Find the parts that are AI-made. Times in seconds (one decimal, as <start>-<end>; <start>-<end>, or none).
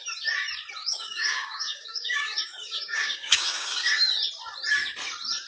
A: 0.8-4.1